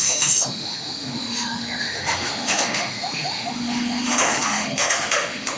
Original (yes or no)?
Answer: no